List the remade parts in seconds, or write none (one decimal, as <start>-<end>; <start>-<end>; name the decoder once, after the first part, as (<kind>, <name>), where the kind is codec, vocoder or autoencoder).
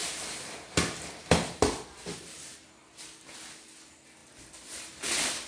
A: none